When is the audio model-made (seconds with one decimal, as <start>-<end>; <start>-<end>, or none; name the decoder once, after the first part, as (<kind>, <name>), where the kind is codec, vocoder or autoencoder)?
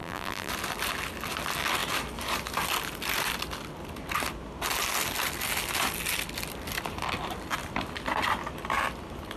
0.0-0.5 (vocoder, BigVGAN v2)